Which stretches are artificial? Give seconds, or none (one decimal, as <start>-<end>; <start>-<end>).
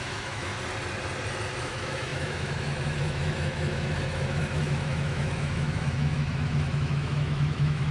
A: 0.0-0.5; 1.6-7.9